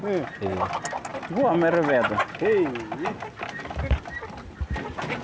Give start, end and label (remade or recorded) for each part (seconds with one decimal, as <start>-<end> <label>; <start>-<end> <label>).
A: 0.0-5.2 recorded